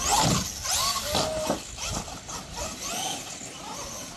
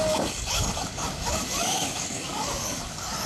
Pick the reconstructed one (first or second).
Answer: second